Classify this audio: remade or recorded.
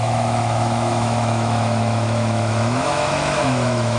remade